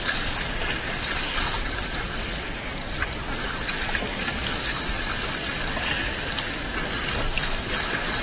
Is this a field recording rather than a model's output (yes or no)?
yes